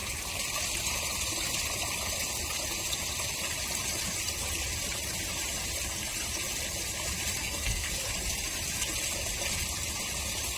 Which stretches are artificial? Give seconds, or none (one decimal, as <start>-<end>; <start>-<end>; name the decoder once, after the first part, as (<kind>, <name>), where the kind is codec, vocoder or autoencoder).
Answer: 7.4-8.0 (codec, SNAC)